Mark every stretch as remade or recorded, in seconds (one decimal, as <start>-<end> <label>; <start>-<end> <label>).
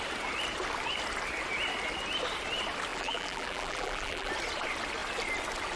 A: 0.0-2.9 recorded; 2.9-4.3 remade; 4.3-5.8 recorded